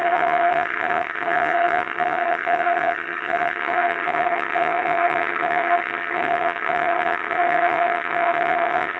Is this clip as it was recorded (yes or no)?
no